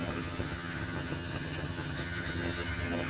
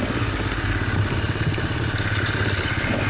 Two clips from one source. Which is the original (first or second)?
second